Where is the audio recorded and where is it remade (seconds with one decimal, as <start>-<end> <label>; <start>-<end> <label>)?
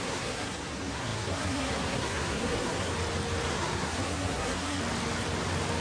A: 0.0-2.9 remade; 2.9-3.5 recorded; 3.5-4.8 remade; 4.8-5.8 recorded